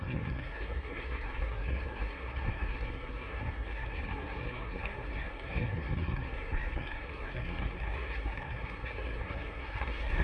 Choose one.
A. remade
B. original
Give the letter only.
A